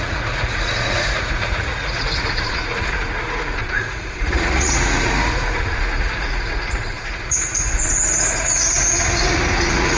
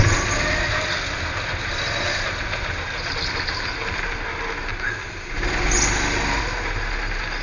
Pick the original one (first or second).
second